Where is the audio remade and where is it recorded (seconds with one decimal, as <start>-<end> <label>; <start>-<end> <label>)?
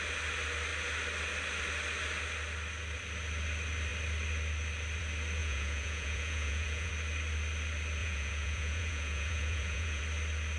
0.0-5.4 recorded; 5.4-6.9 remade; 6.9-8.0 recorded; 8.0-10.0 remade; 10.0-10.6 recorded